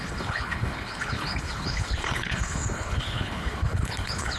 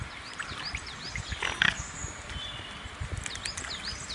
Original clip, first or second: second